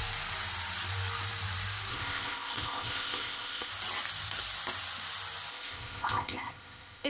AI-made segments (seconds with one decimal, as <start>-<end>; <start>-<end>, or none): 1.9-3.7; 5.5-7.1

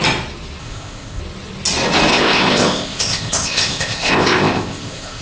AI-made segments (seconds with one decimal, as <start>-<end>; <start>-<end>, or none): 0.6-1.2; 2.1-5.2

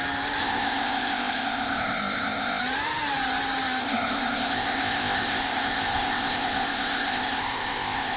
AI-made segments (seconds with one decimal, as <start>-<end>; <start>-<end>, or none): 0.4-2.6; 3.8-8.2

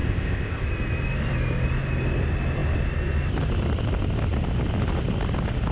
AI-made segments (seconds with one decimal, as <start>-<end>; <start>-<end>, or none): 0.0-0.6

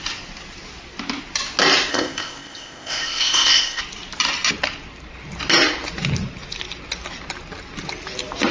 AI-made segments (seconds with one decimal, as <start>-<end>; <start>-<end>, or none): 1.9-3.8